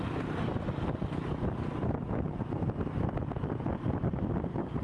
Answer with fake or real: real